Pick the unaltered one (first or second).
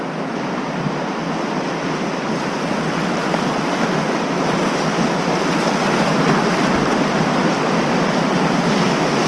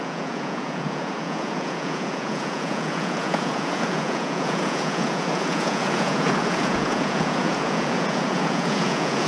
first